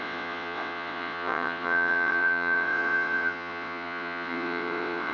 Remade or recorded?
remade